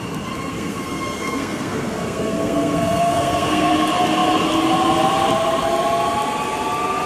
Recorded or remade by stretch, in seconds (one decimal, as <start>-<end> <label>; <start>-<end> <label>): 0.0-0.5 recorded; 0.5-3.7 remade; 3.7-7.1 recorded

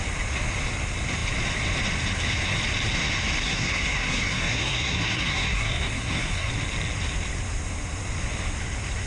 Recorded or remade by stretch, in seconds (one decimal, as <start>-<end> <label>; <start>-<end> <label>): 0.0-3.4 recorded; 3.4-6.5 remade; 6.5-9.1 recorded